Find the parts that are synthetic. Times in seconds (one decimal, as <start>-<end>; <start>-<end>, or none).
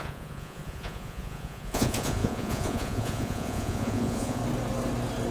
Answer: 0.0-4.4